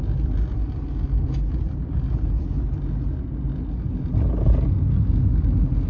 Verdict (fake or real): real